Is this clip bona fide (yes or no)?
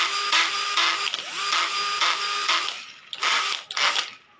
yes